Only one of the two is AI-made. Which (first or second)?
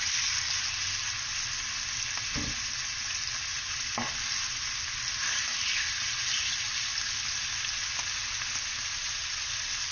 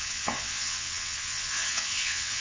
second